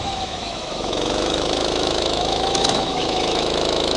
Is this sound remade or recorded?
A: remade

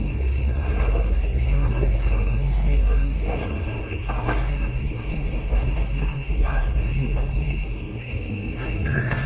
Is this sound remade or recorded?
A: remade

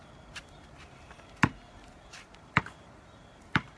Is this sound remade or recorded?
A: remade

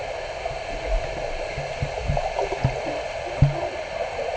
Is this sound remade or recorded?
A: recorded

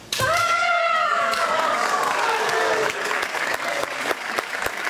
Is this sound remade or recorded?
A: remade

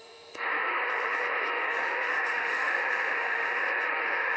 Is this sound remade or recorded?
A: remade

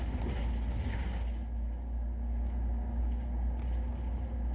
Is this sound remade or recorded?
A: recorded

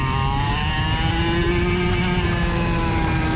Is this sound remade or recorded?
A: recorded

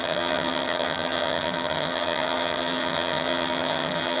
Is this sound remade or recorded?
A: remade